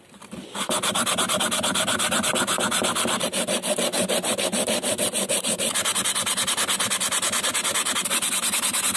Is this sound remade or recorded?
recorded